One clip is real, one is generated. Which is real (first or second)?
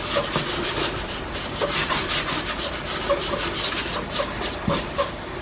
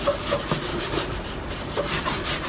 first